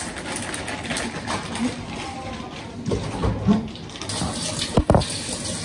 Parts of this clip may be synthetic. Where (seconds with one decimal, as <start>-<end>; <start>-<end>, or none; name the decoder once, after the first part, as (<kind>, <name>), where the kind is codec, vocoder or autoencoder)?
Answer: none